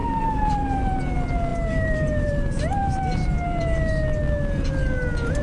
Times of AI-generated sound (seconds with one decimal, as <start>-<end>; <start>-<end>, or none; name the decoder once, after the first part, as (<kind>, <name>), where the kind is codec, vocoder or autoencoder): 0.0-1.0 (vocoder, BigVGAN v2); 1.5-3.6